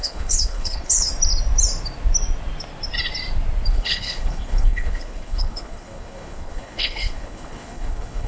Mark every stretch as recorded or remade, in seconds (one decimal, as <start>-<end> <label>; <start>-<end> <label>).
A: 0.0-1.1 remade; 1.1-3.7 recorded; 3.7-8.3 remade